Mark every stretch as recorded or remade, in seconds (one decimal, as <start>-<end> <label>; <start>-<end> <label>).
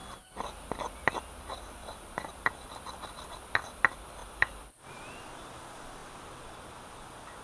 0.0-1.8 recorded; 1.8-2.5 remade; 2.5-7.4 recorded